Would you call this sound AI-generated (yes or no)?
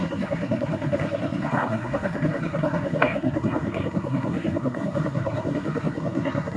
yes